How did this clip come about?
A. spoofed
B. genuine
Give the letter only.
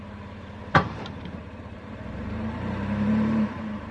A